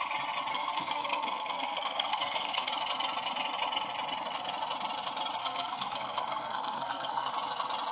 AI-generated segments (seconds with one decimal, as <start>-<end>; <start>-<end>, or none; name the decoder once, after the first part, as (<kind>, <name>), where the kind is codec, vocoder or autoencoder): 0.5-2.7 (codec, SNAC); 5.4-7.3